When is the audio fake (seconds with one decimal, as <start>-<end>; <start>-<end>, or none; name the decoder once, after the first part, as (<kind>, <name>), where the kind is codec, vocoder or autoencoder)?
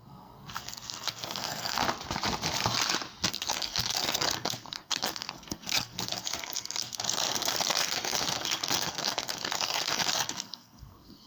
0.0-1.8 (codec, SNAC); 3.3-11.3